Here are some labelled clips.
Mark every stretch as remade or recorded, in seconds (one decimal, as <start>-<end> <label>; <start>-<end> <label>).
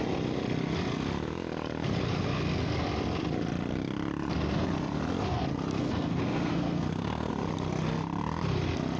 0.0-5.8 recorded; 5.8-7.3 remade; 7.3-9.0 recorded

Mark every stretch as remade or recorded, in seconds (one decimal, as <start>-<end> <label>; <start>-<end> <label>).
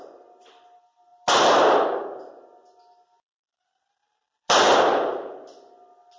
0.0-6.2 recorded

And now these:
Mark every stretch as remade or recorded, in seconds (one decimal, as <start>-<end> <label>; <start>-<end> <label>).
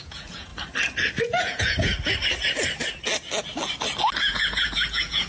0.0-0.5 remade; 0.5-1.2 recorded; 1.2-1.9 remade; 1.9-4.2 recorded; 4.2-5.3 remade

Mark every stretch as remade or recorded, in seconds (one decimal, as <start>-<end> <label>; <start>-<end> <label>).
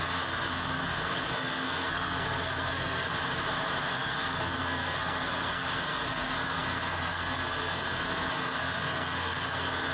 0.0-3.1 remade; 3.1-3.9 recorded; 3.9-9.9 remade